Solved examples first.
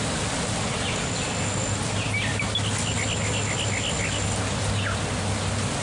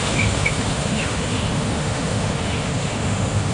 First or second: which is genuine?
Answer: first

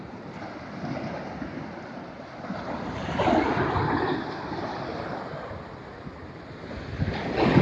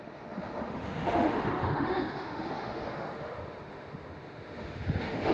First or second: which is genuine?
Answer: first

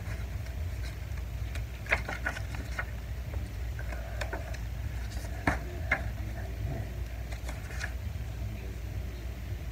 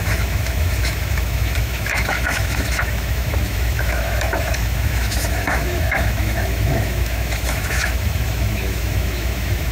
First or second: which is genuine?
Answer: first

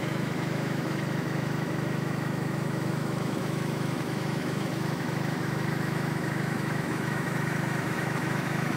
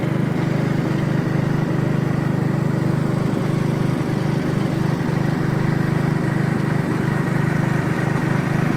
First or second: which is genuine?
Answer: second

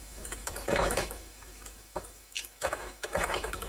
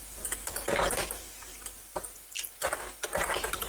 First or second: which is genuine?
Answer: second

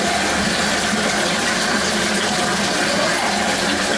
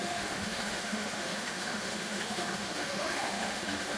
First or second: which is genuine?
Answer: first